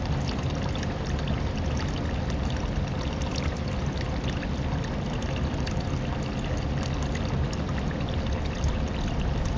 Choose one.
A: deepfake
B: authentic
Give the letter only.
B